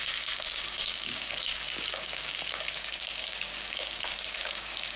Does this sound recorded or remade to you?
remade